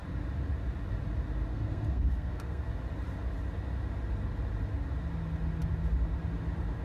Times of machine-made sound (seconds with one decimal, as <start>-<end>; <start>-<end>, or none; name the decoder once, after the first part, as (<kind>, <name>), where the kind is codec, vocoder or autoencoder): 1.5-2.7 (codec, SNAC)